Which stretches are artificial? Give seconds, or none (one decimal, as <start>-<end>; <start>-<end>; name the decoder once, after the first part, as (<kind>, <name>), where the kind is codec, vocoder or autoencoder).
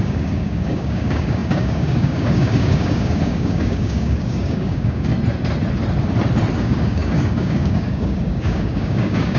0.0-5.1 (codec, DAC); 6.6-9.4